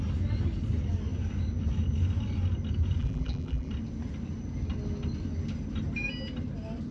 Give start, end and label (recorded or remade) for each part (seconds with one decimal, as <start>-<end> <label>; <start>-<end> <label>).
0.0-3.0 recorded; 3.0-3.7 remade; 3.7-6.9 recorded